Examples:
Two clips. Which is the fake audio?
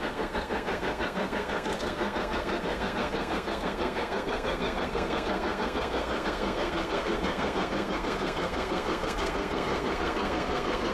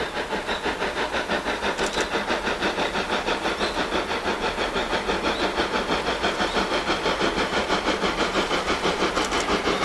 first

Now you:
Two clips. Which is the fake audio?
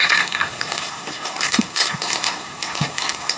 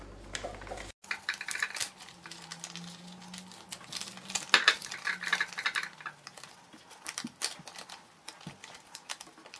first